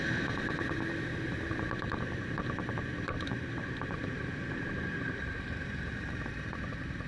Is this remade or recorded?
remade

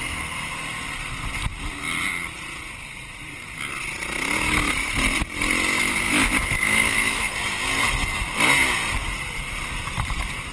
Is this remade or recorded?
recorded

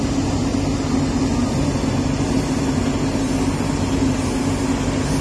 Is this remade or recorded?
recorded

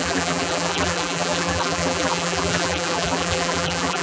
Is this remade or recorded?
remade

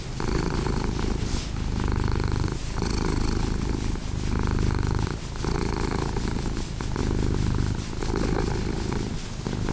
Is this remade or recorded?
recorded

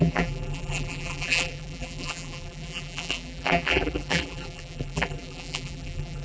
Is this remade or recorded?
remade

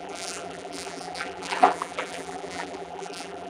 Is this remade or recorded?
remade